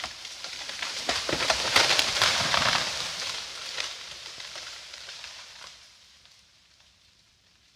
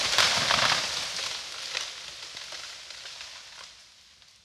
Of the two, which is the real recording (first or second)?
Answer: second